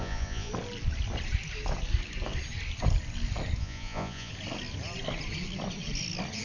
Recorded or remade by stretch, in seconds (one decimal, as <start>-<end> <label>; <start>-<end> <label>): 0.0-0.5 remade; 0.5-3.6 recorded; 3.6-4.3 remade; 4.3-6.4 recorded